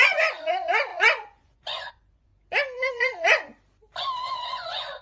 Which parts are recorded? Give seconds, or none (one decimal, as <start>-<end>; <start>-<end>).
2.3-2.9; 3.5-4.3